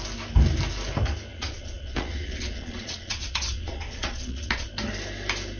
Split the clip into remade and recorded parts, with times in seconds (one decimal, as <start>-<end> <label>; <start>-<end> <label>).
0.0-1.3 recorded; 1.3-4.7 remade; 4.7-5.6 recorded